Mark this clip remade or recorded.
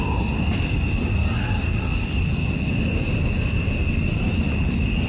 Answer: recorded